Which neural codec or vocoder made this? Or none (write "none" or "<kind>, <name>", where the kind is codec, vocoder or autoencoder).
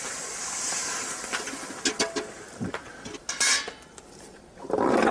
none